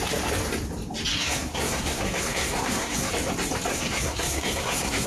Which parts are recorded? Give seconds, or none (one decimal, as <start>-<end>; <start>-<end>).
0.0-1.1; 3.1-3.7